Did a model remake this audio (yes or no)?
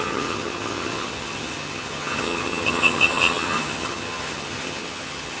yes